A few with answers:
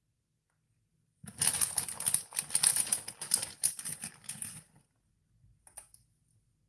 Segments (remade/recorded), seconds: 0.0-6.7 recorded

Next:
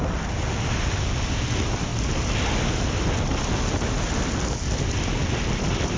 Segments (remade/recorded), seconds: 0.0-6.0 recorded

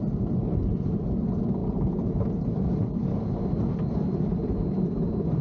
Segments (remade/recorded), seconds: 0.0-5.4 recorded